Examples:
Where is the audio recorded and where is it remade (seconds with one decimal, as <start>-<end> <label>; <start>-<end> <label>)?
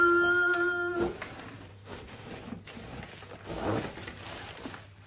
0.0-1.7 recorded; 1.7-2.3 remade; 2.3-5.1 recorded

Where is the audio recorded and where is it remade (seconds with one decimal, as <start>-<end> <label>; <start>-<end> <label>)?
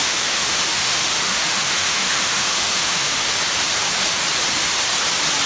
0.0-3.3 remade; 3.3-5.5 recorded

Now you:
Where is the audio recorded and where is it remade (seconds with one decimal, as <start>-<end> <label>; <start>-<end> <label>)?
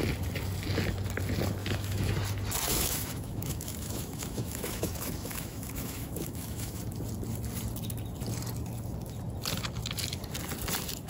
0.0-1.6 recorded; 1.6-2.1 remade; 2.1-2.7 recorded; 2.7-6.8 remade; 6.8-11.1 recorded